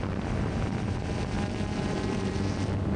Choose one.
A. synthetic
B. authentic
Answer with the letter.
A